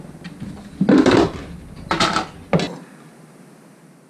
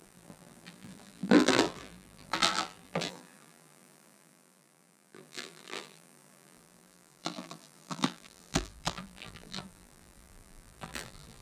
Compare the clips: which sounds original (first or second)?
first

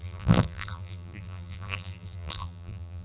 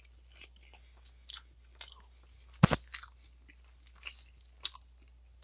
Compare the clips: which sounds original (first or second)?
second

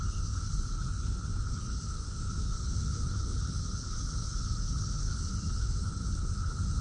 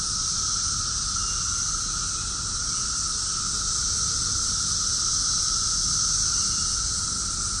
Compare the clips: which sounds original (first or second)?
second